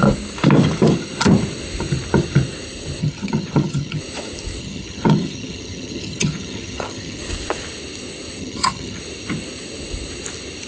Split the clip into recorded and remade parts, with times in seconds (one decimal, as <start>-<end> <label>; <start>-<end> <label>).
0.0-3.0 recorded; 3.0-4.0 remade; 4.0-4.6 recorded; 4.6-7.2 remade; 7.2-8.4 recorded; 8.4-9.0 remade; 9.0-10.7 recorded